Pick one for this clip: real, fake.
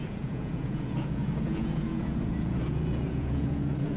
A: fake